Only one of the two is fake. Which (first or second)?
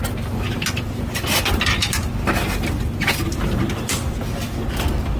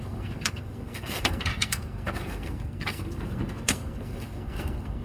second